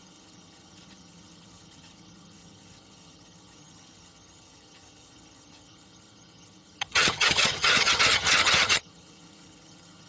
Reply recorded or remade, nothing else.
remade